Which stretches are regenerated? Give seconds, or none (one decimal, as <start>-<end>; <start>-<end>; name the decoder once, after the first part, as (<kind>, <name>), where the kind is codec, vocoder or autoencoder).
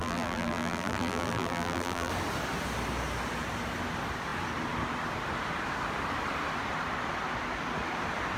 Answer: 0.0-2.1 (vocoder, BigVGAN v2)